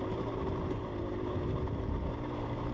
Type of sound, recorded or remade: remade